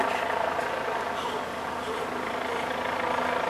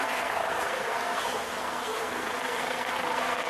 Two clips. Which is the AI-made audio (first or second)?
second